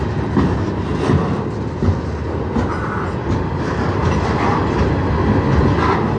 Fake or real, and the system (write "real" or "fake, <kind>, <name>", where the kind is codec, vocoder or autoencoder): real